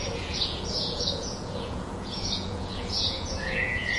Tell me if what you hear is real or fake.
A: fake